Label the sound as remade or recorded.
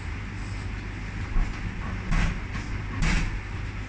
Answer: recorded